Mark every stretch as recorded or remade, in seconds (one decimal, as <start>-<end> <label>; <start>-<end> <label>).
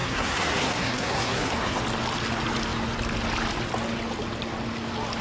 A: 0.0-1.8 remade; 1.8-5.2 recorded